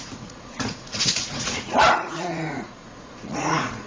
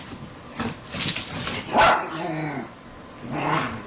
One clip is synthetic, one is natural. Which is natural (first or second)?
second